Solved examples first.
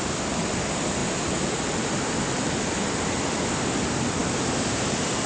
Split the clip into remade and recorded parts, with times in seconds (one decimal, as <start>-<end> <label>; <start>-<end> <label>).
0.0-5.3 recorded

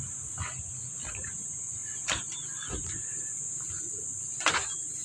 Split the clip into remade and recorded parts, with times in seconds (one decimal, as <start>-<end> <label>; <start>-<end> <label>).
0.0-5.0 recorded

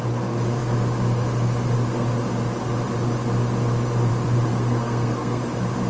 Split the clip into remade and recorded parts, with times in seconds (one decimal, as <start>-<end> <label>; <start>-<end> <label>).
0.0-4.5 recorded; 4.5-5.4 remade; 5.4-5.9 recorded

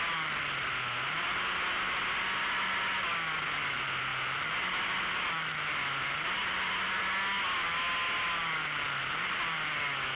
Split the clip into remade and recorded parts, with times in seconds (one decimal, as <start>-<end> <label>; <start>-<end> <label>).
0.0-10.2 recorded

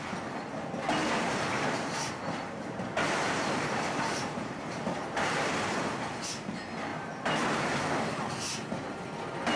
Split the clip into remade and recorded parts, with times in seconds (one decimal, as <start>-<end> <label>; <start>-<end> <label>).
0.0-1.0 recorded; 1.0-5.5 remade; 5.5-6.9 recorded; 6.9-7.8 remade; 7.8-9.6 recorded

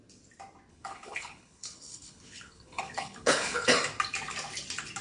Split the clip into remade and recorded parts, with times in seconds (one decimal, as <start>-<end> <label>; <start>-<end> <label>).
0.0-0.7 recorded; 0.7-3.7 remade; 3.7-5.0 recorded